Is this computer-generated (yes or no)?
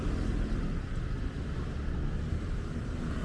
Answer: no